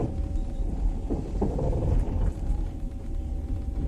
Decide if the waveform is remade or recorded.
remade